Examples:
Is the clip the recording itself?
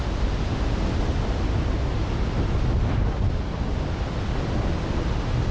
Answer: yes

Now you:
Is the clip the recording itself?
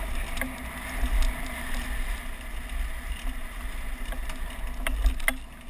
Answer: yes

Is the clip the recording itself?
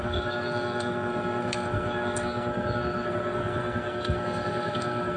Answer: no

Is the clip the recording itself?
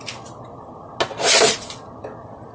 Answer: yes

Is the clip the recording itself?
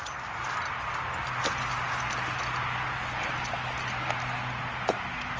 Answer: yes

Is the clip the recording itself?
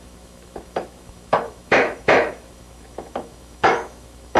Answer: no